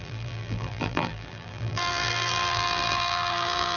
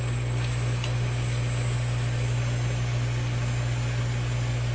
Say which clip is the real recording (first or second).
second